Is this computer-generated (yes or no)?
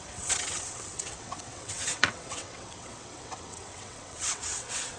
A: yes